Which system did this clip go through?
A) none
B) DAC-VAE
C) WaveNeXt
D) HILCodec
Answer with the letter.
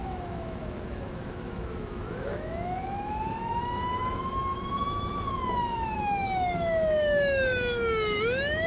B